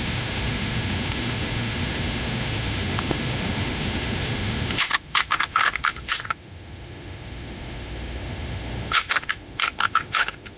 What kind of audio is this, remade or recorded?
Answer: remade